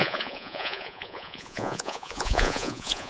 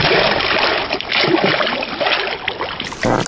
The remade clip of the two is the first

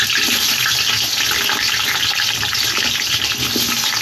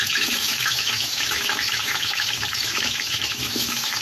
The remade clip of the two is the second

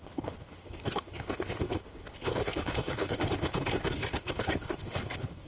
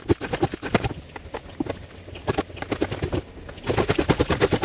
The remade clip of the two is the first